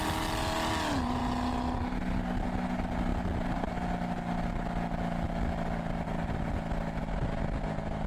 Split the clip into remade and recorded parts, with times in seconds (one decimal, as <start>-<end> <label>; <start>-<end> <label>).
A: 0.0-8.1 recorded